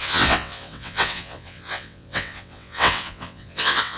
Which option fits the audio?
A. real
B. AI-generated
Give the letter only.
B